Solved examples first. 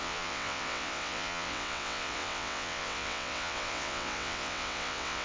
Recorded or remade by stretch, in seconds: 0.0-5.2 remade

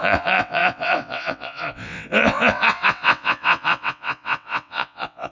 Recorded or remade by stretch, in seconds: 0.0-5.3 remade